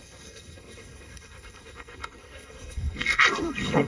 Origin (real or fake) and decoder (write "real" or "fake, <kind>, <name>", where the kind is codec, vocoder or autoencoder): fake, codec, SNAC